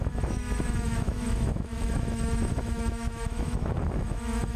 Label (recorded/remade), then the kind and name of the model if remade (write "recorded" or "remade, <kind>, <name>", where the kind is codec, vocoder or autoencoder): remade, autoencoder, DAC-VAE